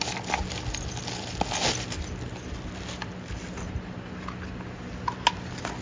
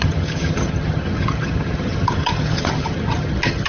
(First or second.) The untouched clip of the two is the first